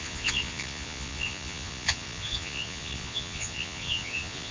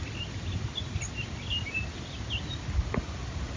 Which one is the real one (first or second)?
second